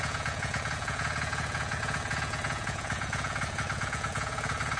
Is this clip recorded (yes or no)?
no